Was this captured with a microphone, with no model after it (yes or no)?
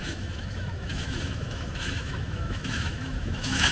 no